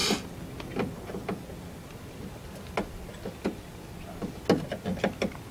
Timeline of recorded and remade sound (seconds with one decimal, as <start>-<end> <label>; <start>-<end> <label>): 0.0-5.5 recorded